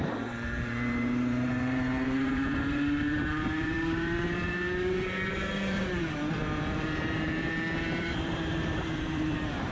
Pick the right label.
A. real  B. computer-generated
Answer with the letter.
B